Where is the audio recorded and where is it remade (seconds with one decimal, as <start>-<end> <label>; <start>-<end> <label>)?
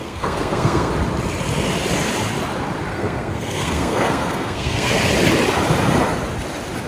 0.0-0.9 remade; 0.9-2.9 recorded; 2.9-5.0 remade; 5.0-6.9 recorded